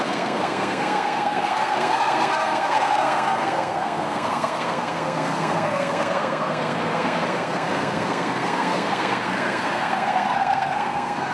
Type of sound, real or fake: fake